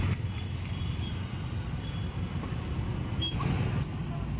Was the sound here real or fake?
real